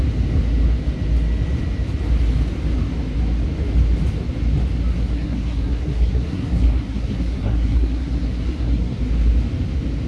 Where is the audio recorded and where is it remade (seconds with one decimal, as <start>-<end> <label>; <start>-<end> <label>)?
0.0-4.9 recorded; 4.9-9.0 remade; 9.0-10.1 recorded